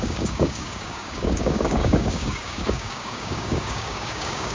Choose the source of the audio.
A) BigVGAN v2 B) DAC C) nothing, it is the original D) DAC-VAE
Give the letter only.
B